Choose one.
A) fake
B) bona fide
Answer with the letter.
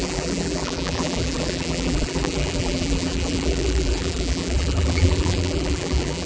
A